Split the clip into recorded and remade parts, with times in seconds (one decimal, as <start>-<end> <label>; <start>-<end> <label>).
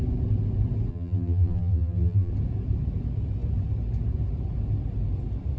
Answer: 0.0-0.9 recorded; 0.9-2.3 remade; 2.3-5.6 recorded